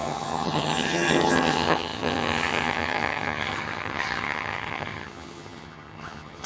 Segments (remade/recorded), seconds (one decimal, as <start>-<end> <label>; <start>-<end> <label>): 0.0-6.5 remade